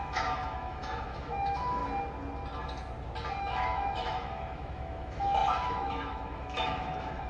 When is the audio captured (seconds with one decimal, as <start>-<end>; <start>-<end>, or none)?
1.8-3.4